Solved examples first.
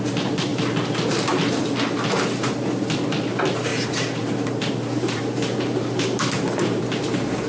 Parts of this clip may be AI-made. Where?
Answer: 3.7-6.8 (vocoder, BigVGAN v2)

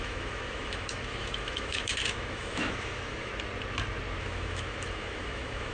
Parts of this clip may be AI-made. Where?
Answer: 0.0-3.3 (autoencoder, DAC-VAE); 4.2-5.7

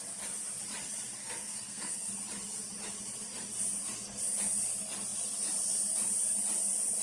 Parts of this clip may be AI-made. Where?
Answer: 1.2-2.1 (codec, SNAC)